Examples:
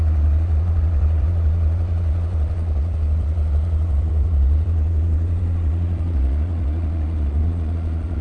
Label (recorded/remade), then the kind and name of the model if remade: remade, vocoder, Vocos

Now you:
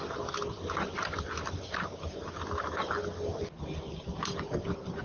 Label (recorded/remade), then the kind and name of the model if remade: recorded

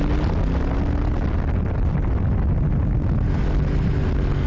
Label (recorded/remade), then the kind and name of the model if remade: recorded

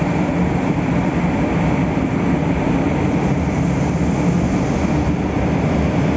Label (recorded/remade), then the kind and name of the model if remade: recorded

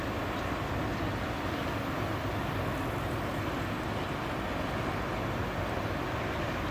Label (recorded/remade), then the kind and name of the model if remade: recorded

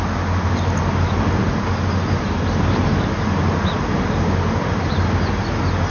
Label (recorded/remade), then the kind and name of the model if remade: recorded